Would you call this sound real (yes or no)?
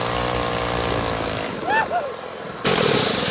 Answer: yes